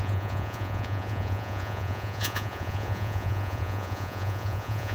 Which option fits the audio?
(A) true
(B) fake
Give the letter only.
B